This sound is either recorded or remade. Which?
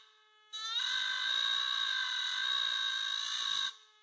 recorded